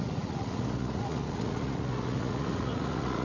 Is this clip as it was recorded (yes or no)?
no